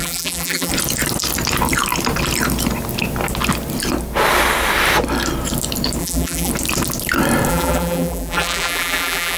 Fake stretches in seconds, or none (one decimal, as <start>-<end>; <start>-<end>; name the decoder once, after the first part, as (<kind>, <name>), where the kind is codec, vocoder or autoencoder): 0.0-0.7 (vocoder, BigVGAN v2); 6.0-6.5; 7.5-9.4